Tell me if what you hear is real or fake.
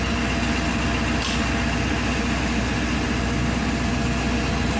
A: real